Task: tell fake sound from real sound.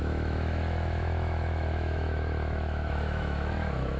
fake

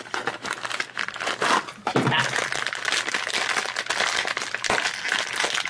real